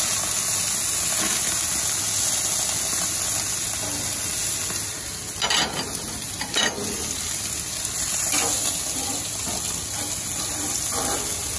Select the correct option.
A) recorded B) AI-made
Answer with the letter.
A